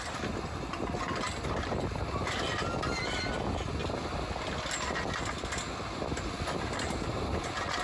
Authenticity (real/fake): real